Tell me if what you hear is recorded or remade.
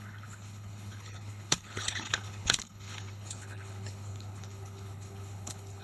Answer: remade